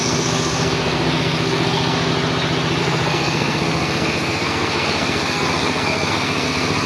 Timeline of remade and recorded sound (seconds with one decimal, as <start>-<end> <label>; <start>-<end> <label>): 0.0-2.1 remade; 2.1-2.8 recorded; 2.8-6.9 remade

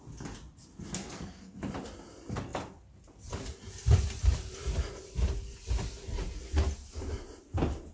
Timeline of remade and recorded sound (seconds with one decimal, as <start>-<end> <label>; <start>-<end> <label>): 0.0-1.0 recorded; 1.0-1.6 remade; 1.6-7.9 recorded

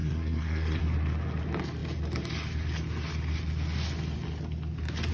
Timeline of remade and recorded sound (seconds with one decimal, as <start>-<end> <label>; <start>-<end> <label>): 0.0-0.8 remade; 0.8-5.1 recorded

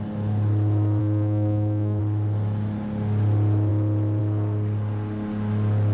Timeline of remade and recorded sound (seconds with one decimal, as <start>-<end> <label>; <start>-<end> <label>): 0.0-1.0 recorded; 1.0-2.0 remade; 2.0-5.9 recorded

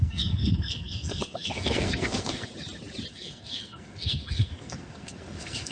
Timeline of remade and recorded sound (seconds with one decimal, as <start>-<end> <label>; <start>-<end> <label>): 0.0-2.5 remade; 2.5-3.1 recorded; 3.1-5.7 remade